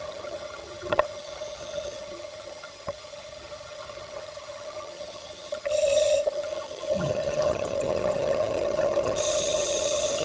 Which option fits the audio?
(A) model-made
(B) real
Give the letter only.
A